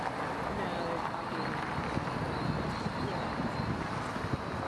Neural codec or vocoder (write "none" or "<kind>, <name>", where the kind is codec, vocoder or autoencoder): none